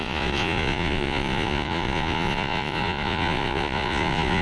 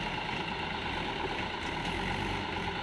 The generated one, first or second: first